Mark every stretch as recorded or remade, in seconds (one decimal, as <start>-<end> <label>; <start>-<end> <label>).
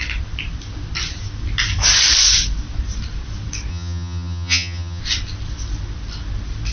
0.0-3.7 recorded; 3.7-5.0 remade; 5.0-6.7 recorded